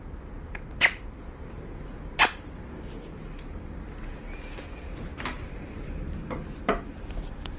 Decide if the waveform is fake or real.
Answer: fake